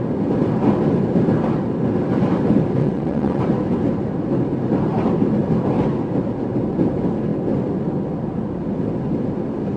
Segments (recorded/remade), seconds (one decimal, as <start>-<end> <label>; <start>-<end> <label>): 0.0-2.8 recorded; 2.8-3.4 remade; 3.4-9.8 recorded